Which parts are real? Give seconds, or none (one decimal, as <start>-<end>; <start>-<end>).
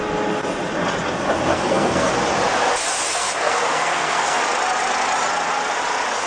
0.0-1.5; 2.1-3.1; 4.4-6.3